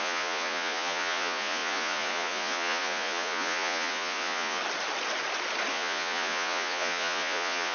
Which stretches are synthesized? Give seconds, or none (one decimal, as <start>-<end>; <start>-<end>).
0.0-4.6; 5.7-7.7